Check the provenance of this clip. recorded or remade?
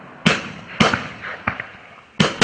recorded